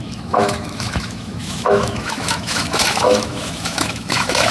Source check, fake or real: fake